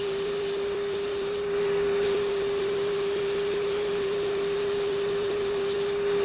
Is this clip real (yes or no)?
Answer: yes